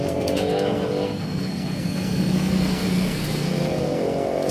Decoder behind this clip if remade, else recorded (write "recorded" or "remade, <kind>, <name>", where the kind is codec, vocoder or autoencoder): remade, codec, SNAC